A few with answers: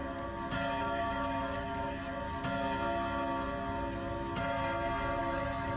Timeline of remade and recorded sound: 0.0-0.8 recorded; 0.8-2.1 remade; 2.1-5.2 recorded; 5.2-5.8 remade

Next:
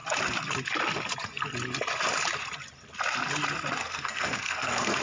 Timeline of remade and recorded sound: 0.0-3.8 recorded; 3.8-5.0 remade

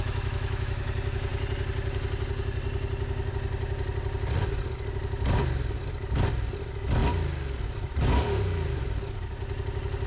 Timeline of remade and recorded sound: 0.0-0.8 remade; 0.8-10.1 recorded

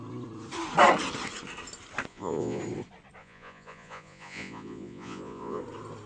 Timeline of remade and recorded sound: 0.0-2.1 recorded; 2.1-2.6 remade; 2.6-3.2 recorded; 3.2-5.6 remade; 5.6-6.1 recorded

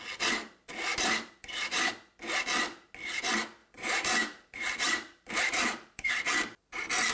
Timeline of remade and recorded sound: 0.0-0.9 recorded; 0.9-1.9 remade; 1.9-3.6 recorded; 3.6-6.1 remade; 6.1-7.1 recorded

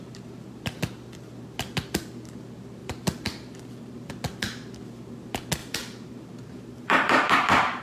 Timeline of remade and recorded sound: 0.0-2.8 recorded; 2.8-4.1 remade; 4.1-5.6 recorded; 5.6-7.8 remade

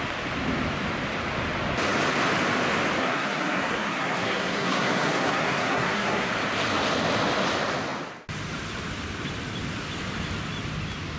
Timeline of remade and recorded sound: 0.0-3.0 recorded; 3.0-6.3 remade; 6.3-11.2 recorded

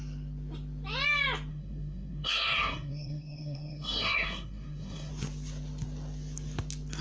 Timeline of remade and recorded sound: 0.0-1.5 recorded; 1.5-5.1 remade; 5.1-7.0 recorded